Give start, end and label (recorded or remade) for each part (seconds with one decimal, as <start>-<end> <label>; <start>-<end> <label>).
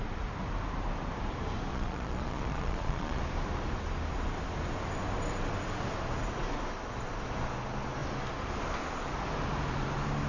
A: 0.0-1.7 recorded; 1.7-3.2 remade; 3.2-10.3 recorded